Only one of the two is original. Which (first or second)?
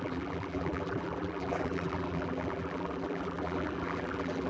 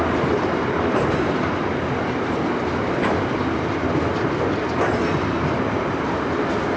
second